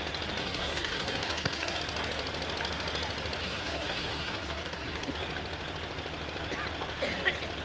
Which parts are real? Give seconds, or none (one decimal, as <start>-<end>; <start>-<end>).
0.0-0.4; 1.8-3.4; 5.1-7.6